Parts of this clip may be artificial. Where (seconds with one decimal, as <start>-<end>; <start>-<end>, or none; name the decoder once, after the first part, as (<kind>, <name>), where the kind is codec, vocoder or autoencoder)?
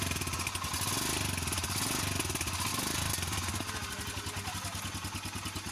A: none